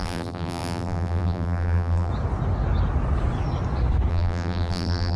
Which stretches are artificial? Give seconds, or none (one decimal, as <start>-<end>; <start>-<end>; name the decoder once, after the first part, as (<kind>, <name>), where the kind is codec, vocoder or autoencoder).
0.0-2.1 (vocoder, BigVGAN v2); 4.1-5.2